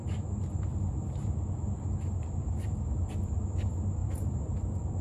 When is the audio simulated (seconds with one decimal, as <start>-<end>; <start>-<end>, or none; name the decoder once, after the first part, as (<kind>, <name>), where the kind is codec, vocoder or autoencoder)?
0.0-3.0 (vocoder, BigVGAN v2); 4.0-4.6